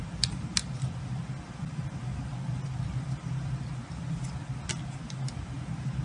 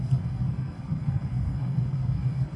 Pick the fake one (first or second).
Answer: second